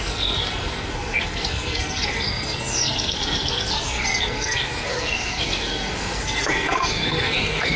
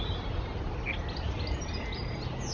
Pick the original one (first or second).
second